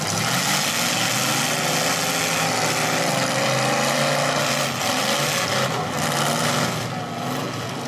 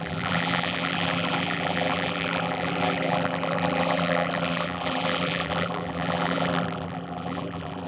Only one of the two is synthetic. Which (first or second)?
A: second